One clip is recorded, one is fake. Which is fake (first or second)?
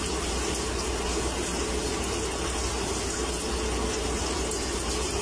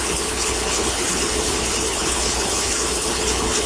second